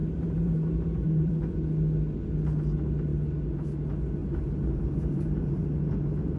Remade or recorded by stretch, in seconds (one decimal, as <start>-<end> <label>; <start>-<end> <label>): 0.0-1.5 remade; 1.5-4.2 recorded; 4.2-5.6 remade; 5.6-6.4 recorded